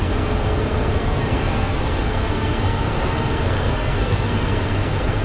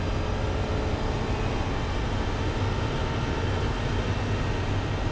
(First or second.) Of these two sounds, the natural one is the second